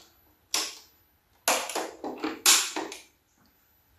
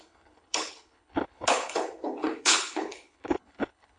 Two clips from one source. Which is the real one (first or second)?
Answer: first